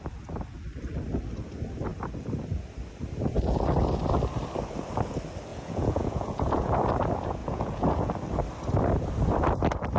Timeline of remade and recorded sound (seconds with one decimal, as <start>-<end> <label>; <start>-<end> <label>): 0.0-5.5 recorded; 5.5-6.7 remade; 6.7-7.4 recorded; 7.4-8.1 remade; 8.1-10.0 recorded